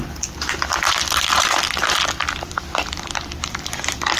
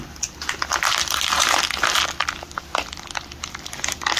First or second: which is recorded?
second